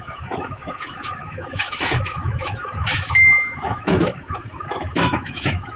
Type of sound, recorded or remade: remade